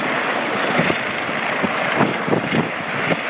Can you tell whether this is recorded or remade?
remade